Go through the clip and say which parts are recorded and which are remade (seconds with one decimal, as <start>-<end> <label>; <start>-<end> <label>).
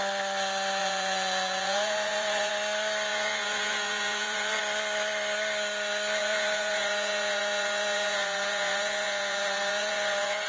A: 0.0-0.8 recorded; 0.8-2.5 remade; 2.5-3.1 recorded; 3.1-4.6 remade; 4.6-6.2 recorded; 6.2-10.5 remade